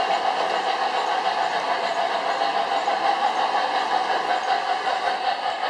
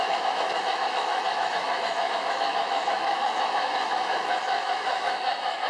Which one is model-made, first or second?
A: second